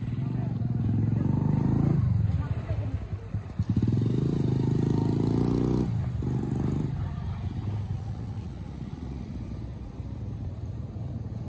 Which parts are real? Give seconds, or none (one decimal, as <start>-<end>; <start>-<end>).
0.0-7.9; 9.3-11.5